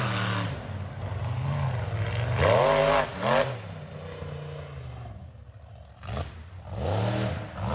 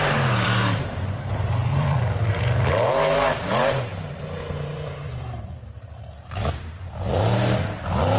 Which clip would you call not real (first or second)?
second